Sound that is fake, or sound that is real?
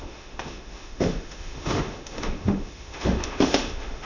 fake